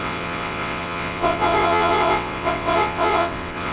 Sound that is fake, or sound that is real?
fake